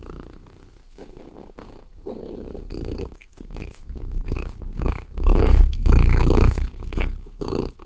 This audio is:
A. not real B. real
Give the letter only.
A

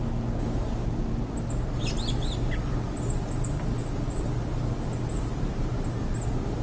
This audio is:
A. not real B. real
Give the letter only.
B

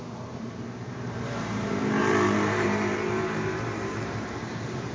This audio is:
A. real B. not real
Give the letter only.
B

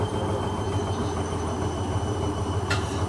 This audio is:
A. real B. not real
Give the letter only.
B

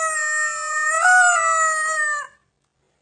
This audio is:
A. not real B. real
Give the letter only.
B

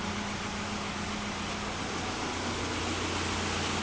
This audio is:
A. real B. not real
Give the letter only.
A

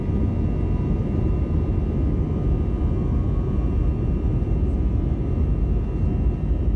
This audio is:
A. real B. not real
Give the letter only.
A